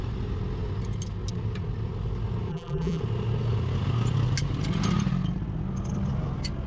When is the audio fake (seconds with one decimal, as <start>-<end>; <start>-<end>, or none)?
2.5-3.0